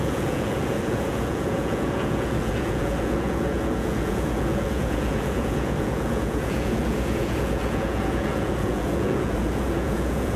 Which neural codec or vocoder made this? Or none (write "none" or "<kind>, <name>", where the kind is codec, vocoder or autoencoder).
vocoder, Vocos